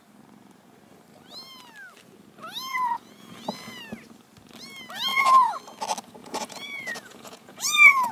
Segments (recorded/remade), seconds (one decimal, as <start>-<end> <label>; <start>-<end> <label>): 0.0-2.7 recorded; 2.7-3.8 remade; 3.8-5.1 recorded; 5.1-5.6 remade; 5.6-6.2 recorded; 6.2-8.1 remade